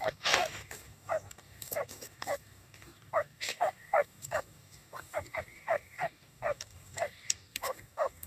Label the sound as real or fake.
fake